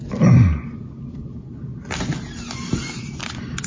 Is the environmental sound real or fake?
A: real